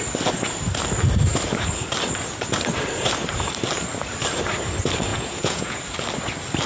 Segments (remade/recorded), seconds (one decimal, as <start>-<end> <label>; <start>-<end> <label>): 0.0-5.1 recorded; 5.1-5.8 remade; 5.8-6.7 recorded

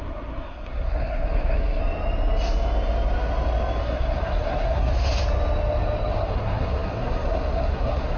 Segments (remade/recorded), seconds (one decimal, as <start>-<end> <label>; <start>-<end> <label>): 0.0-1.8 remade; 1.8-3.8 recorded; 3.8-4.9 remade; 4.9-6.1 recorded; 6.1-8.2 remade

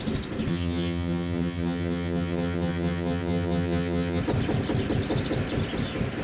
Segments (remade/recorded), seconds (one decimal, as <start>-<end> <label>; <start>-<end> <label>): 0.0-0.5 recorded; 0.5-4.2 remade; 4.2-6.2 recorded

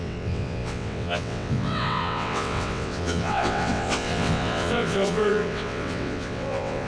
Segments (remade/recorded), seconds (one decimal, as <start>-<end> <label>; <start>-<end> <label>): 0.0-6.9 remade

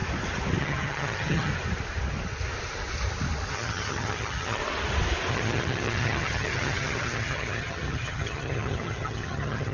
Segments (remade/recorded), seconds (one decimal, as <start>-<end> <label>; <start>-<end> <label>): 0.0-0.6 recorded; 0.6-1.5 remade; 1.5-3.5 recorded; 3.5-4.6 remade; 4.6-5.3 recorded; 5.3-9.7 remade

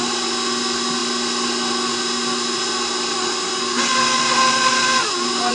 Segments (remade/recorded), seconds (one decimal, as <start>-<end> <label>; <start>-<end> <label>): 0.0-5.5 recorded

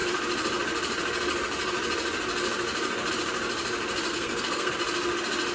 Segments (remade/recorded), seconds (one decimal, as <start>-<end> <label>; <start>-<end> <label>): 0.0-4.1 recorded; 4.1-4.7 remade; 4.7-5.5 recorded